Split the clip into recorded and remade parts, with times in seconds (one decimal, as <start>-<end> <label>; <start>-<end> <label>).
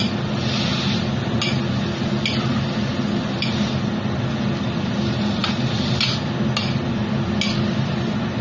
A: 0.0-8.4 recorded